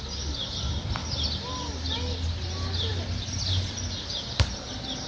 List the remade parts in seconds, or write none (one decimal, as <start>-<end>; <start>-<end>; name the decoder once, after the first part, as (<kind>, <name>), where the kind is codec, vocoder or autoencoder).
none